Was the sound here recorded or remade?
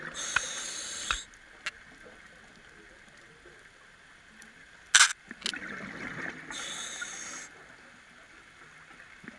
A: recorded